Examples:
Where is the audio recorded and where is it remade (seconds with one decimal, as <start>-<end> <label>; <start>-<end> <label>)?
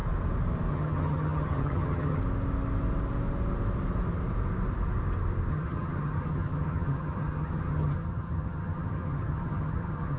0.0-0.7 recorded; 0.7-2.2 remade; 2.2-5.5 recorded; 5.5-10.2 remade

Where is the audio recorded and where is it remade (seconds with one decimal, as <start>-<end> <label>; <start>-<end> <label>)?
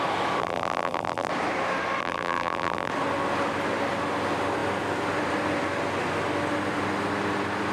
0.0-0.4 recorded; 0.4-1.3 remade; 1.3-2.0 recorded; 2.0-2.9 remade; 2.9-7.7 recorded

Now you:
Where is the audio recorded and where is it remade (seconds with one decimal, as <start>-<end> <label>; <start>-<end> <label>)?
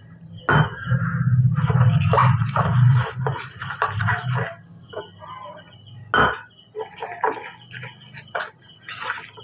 0.0-2.2 recorded; 2.2-4.0 remade; 4.0-9.4 recorded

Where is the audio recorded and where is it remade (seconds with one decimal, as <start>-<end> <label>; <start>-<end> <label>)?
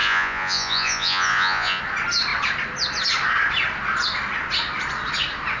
0.0-1.8 remade; 1.8-5.6 recorded